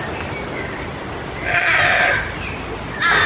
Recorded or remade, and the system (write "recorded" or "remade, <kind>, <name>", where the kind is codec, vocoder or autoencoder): recorded